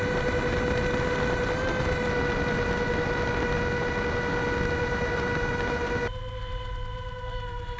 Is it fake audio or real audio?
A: real